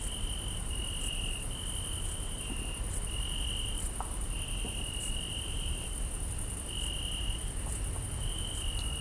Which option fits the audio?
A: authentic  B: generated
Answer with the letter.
A